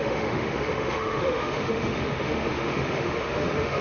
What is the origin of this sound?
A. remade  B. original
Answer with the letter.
A